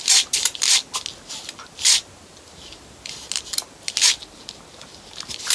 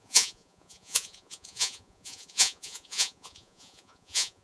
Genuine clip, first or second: first